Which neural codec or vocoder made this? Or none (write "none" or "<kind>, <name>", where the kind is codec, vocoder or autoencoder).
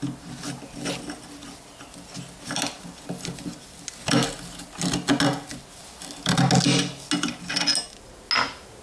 none